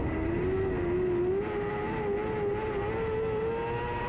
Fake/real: real